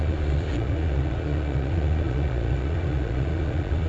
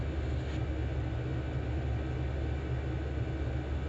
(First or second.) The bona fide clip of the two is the second